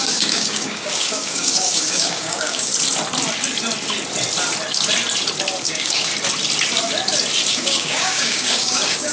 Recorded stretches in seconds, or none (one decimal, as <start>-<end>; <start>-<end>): 2.7-5.6; 6.1-7.5